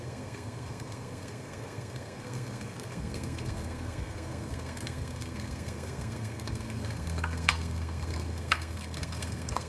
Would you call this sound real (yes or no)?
no